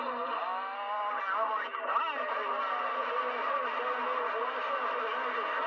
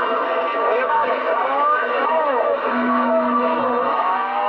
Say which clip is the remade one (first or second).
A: second